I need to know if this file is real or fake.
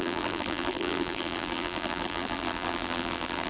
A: fake